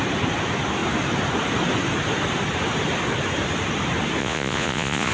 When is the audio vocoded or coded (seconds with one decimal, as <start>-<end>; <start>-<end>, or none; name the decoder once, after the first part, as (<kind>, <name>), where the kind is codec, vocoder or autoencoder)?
4.2-5.1 (vocoder, Vocos)